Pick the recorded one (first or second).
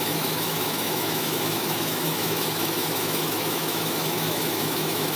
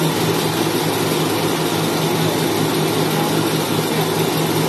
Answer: second